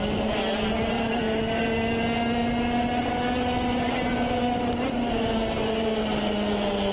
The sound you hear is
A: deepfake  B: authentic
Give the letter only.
B